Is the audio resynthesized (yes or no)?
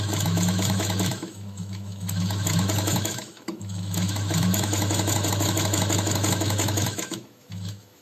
yes